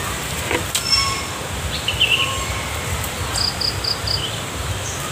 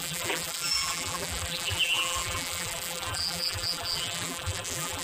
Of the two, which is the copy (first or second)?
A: second